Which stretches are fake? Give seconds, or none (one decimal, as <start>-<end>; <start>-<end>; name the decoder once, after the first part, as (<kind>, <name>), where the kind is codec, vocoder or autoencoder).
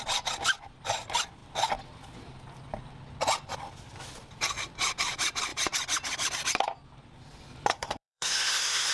7.7-8.9 (codec, SNAC)